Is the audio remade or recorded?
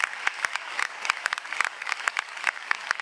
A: remade